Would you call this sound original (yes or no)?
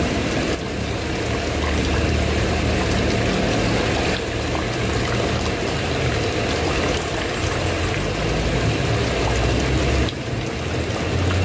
yes